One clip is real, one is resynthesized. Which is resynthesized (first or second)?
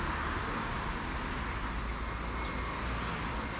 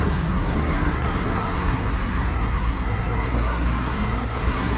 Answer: second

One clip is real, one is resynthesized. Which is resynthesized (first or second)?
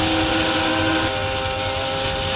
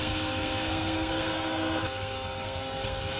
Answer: second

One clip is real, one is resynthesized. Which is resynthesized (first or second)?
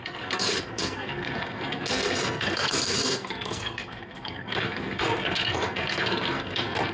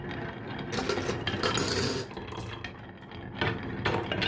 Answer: first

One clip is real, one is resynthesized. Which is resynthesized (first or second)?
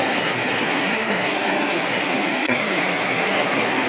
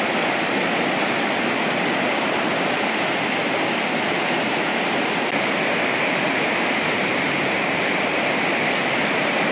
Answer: first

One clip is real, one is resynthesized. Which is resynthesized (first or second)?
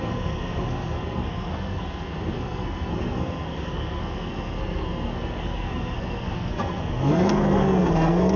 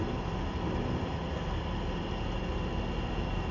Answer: first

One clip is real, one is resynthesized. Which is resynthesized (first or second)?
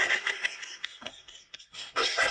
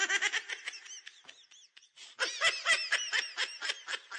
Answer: first